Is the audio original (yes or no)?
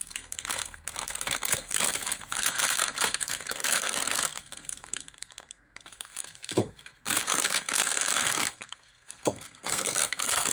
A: no